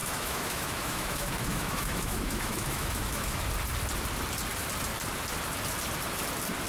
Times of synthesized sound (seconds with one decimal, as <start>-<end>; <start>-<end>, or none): 0.0-3.5